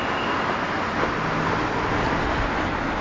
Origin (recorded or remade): recorded